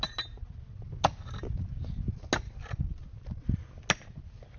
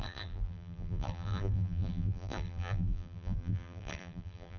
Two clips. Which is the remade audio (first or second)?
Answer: second